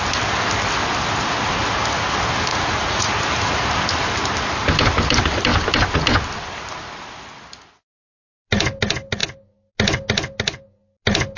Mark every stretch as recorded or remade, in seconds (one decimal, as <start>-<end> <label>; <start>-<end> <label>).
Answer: 0.0-2.5 recorded; 2.5-3.1 remade; 3.1-11.4 recorded